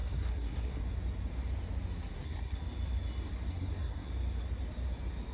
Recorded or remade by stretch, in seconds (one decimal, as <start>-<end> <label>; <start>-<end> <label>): 0.0-0.8 remade; 0.8-2.1 recorded; 2.1-2.6 remade; 2.6-3.5 recorded; 3.5-4.1 remade; 4.1-5.3 recorded